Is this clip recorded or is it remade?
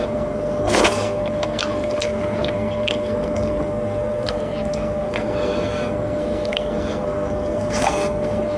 remade